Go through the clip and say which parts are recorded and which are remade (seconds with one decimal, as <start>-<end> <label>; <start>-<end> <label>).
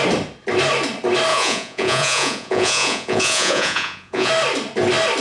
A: 0.0-1.3 recorded; 1.3-4.3 remade; 4.3-5.2 recorded